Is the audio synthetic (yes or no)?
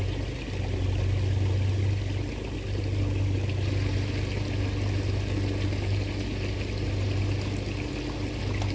no